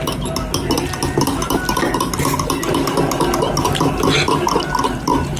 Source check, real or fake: real